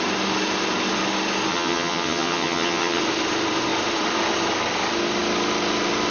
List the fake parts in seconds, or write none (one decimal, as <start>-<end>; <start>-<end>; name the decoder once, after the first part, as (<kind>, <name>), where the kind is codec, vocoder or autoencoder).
1.5-3.0 (vocoder, HiFi-GAN)